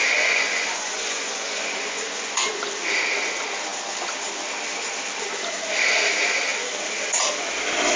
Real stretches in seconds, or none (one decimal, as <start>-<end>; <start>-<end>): 2.6-8.0